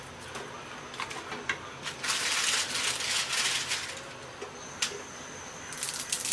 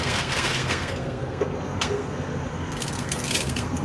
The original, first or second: first